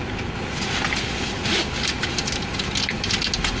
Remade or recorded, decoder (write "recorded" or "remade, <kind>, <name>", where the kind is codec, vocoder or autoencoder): recorded